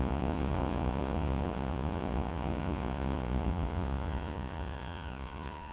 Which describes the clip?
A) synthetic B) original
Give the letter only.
A